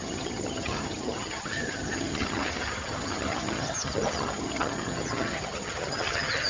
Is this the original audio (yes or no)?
no